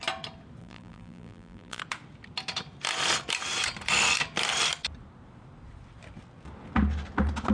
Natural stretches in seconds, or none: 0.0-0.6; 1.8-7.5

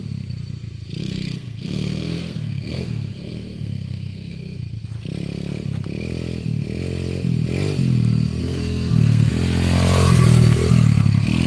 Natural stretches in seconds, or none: 0.0-1.0; 4.6-8.4; 9.3-11.5

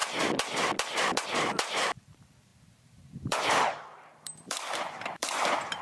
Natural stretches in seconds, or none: 0.0-2.0